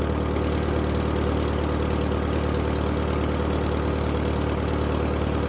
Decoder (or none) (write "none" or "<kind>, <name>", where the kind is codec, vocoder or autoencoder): none